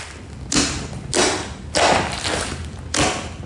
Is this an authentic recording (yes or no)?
yes